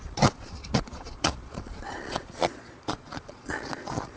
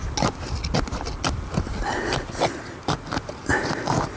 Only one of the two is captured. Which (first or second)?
second